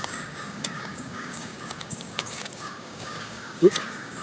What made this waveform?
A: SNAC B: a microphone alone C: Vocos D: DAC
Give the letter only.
D